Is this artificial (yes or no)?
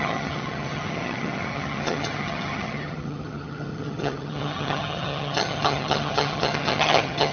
yes